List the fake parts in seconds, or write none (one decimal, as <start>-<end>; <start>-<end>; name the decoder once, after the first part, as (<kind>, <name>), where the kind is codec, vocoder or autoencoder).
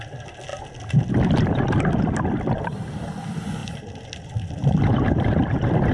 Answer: 3.6-5.9 (vocoder, BigVGAN v2)